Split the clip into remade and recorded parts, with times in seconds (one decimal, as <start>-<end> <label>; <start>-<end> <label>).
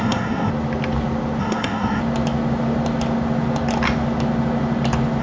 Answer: 0.0-0.5 remade; 0.5-1.4 recorded; 1.4-2.0 remade; 2.0-5.2 recorded